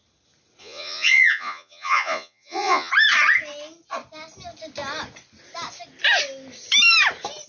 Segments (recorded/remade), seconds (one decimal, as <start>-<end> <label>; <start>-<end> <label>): 0.0-0.6 recorded; 0.6-2.9 remade; 2.9-7.5 recorded